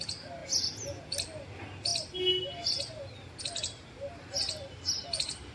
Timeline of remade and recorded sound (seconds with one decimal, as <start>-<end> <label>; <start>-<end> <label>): 0.0-5.5 recorded